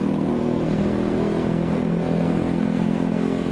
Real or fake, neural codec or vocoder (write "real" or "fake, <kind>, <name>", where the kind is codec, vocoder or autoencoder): fake, codec, SNAC